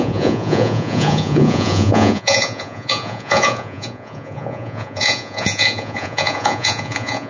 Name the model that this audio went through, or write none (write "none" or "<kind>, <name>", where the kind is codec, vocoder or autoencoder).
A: vocoder, Vocos